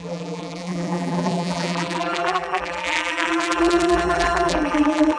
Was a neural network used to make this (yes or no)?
yes